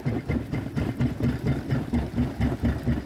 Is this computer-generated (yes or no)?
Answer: no